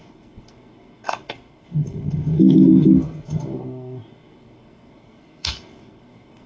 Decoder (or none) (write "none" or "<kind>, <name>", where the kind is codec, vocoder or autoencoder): codec, SNAC